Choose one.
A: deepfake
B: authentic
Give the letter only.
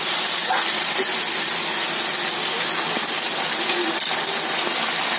B